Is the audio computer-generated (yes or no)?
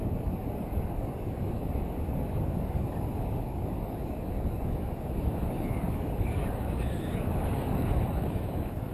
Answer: yes